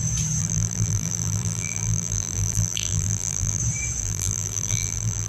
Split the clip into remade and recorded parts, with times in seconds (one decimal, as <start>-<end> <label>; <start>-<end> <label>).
0.0-0.4 recorded; 0.4-3.6 remade; 3.6-4.0 recorded; 4.0-5.3 remade